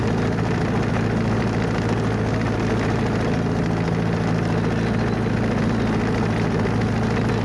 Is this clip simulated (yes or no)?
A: no